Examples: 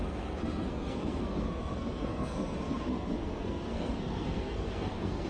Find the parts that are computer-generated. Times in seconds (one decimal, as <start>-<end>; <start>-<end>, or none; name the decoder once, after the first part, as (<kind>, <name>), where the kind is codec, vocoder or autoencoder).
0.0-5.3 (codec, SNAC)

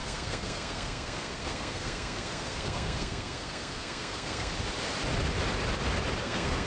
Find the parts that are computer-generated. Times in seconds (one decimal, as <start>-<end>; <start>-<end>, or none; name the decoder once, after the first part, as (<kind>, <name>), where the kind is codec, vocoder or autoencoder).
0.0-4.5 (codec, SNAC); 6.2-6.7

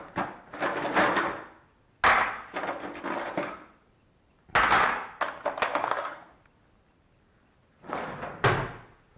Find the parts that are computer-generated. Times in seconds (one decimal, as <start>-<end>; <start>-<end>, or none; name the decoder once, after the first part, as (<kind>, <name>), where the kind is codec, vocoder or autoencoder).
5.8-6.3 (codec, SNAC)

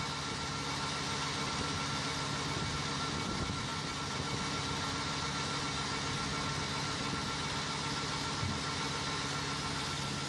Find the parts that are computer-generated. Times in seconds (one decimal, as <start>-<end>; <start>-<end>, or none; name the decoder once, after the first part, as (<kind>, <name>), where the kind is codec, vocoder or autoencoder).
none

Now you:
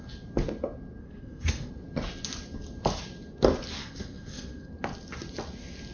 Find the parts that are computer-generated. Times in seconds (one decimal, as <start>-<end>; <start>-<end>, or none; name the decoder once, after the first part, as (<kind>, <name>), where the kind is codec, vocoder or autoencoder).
1.0-1.7 (codec, SNAC); 3.8-4.7